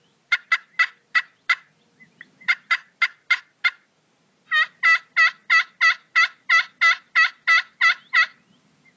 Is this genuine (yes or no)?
yes